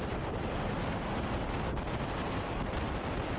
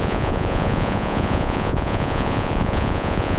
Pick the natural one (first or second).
first